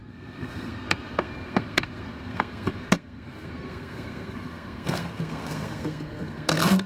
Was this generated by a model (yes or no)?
yes